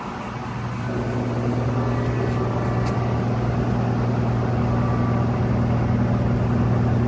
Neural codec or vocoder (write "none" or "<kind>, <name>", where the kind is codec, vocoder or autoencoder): none